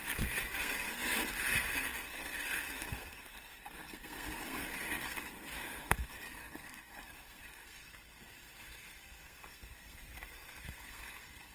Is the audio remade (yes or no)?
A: yes